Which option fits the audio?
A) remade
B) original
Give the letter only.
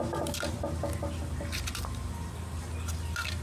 B